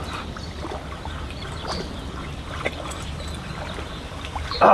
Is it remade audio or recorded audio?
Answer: remade